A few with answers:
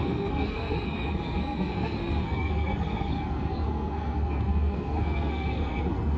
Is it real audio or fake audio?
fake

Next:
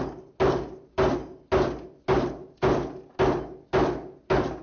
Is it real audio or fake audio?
real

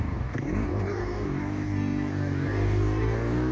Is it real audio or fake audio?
fake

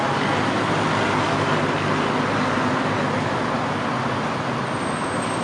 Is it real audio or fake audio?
real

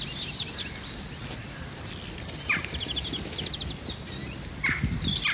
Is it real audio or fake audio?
real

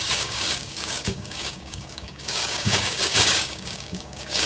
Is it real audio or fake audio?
fake